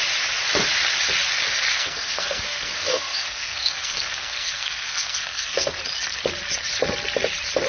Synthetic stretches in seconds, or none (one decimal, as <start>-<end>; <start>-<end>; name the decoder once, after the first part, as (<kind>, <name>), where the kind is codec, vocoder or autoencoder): 1.7-5.7 (codec, SNAC)